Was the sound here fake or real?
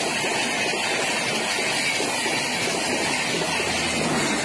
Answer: real